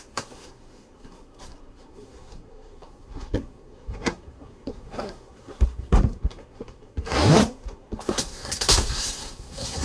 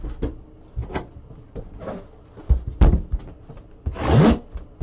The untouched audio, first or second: second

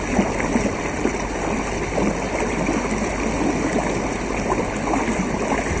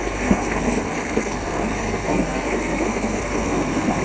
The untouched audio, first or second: first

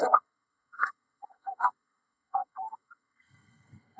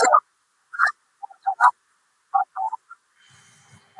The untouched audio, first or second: second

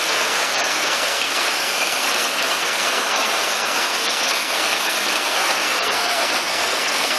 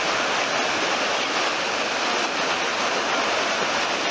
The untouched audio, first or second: second